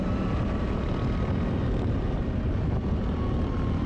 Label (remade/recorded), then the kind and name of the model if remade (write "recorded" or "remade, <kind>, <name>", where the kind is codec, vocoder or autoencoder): recorded